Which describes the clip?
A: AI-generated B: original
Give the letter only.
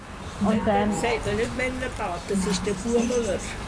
B